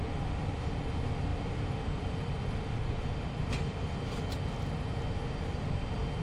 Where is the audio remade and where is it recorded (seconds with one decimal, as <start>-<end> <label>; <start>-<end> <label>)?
0.0-1.3 recorded; 1.3-4.0 remade; 4.0-6.2 recorded